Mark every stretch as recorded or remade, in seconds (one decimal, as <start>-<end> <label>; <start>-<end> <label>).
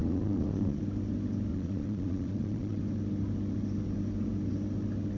0.0-0.8 remade; 0.8-1.5 recorded; 1.5-2.8 remade; 2.8-5.2 recorded